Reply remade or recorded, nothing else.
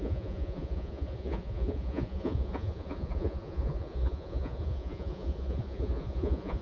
remade